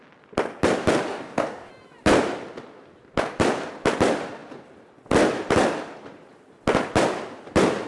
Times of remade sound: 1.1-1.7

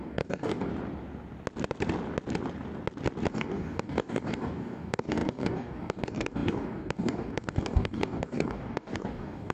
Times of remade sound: 0.0-0.7; 3.3-9.5